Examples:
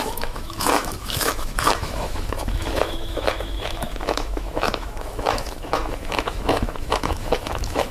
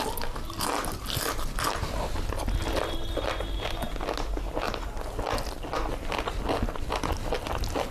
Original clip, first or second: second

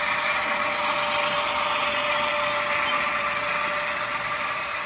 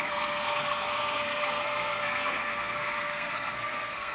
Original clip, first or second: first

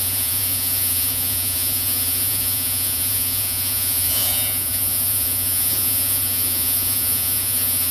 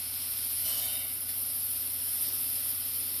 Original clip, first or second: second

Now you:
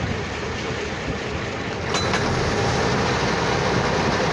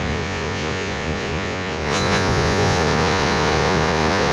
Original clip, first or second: first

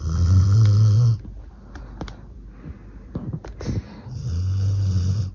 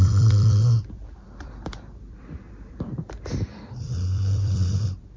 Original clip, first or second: first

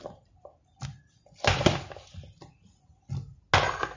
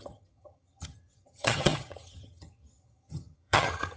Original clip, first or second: first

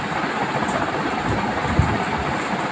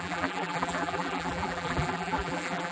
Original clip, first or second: first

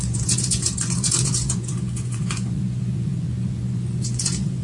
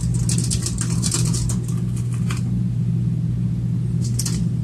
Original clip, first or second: second